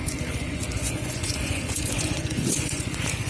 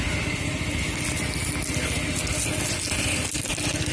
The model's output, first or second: first